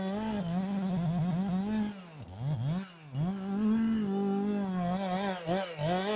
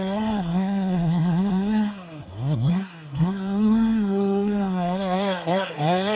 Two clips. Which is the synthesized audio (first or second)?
second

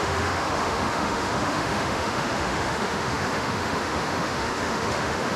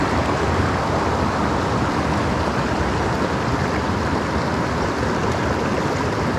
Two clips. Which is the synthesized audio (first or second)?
first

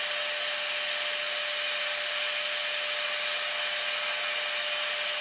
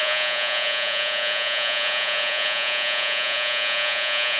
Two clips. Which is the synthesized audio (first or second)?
second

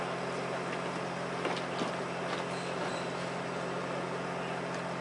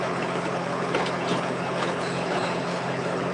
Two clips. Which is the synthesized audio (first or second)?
second